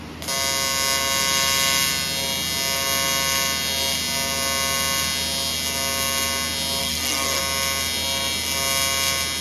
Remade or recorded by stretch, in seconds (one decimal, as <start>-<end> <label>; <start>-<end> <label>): 0.0-6.8 recorded; 6.8-7.4 remade; 7.4-9.4 recorded